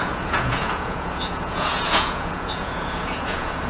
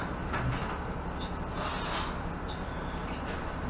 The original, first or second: second